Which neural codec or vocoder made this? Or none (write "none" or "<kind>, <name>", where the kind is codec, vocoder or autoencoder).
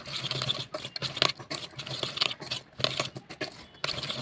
none